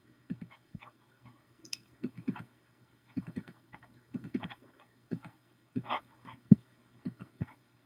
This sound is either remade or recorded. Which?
remade